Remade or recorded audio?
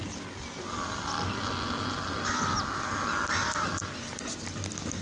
recorded